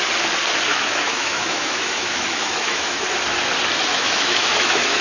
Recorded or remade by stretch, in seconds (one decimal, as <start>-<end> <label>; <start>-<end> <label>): 0.0-0.7 recorded; 0.7-3.0 remade; 3.0-3.9 recorded; 3.9-5.0 remade